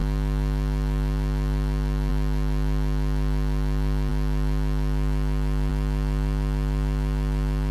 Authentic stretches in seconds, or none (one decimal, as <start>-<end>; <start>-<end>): 0.0-7.7